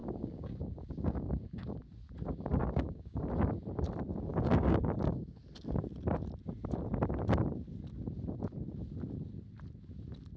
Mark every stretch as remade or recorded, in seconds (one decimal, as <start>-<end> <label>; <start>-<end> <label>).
0.0-1.8 remade; 1.8-2.6 recorded; 2.6-3.2 remade; 3.2-4.3 recorded; 4.3-5.4 remade; 5.4-10.4 recorded